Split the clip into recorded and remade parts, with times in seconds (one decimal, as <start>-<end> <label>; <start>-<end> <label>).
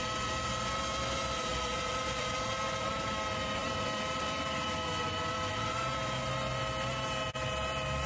0.0-1.5 recorded; 1.5-2.3 remade; 2.3-8.1 recorded